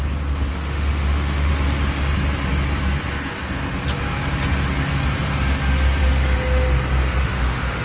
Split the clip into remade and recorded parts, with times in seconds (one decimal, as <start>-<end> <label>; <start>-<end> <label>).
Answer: 0.0-0.5 recorded; 0.5-1.5 remade; 1.5-7.2 recorded; 7.2-7.8 remade